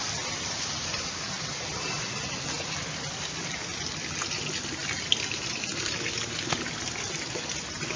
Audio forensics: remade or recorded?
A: recorded